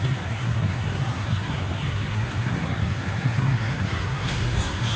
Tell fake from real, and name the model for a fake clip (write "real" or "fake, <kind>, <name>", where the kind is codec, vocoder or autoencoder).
fake, codec, SNAC